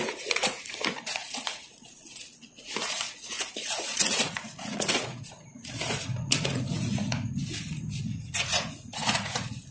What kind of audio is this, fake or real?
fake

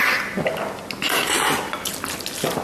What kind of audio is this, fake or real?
real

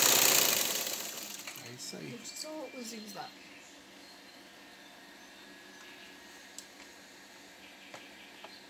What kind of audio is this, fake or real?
real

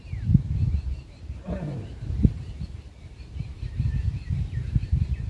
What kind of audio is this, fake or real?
fake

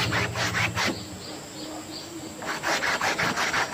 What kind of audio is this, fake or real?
real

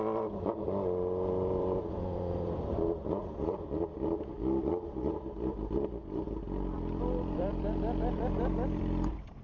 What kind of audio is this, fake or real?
fake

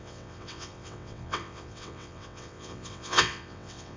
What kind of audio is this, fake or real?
fake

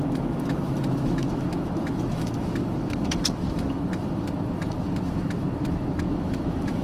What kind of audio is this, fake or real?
fake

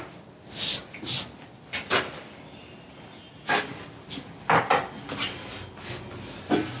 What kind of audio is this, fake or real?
real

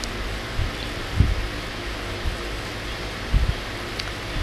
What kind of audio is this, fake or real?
real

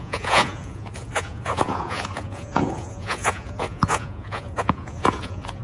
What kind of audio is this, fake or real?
fake